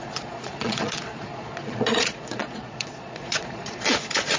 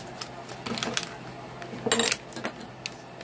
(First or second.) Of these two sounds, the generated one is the first